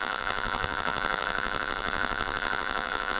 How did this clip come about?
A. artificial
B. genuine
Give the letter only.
A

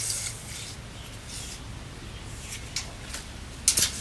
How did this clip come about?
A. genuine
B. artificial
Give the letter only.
A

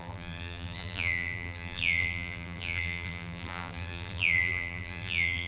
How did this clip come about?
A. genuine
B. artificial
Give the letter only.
B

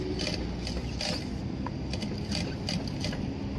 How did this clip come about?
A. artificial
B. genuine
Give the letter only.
B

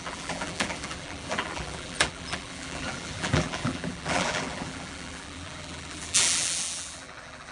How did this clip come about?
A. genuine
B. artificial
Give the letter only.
B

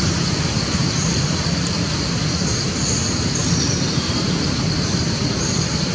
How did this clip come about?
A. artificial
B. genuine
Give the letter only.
A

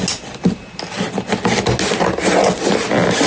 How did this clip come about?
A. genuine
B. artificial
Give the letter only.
A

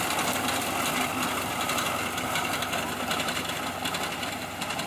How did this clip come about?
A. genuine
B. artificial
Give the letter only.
A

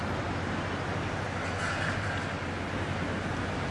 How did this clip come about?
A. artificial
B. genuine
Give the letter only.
B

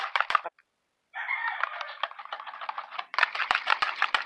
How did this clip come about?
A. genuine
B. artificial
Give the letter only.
B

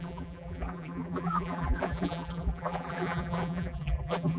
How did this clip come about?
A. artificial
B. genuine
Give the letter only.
A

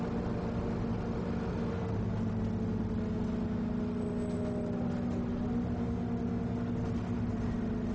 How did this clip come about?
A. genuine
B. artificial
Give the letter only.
A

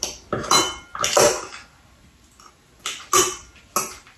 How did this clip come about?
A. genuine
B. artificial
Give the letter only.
A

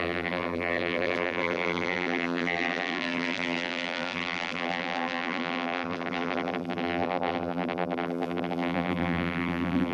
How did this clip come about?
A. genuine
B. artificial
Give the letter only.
B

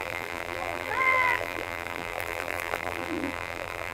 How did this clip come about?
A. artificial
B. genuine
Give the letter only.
A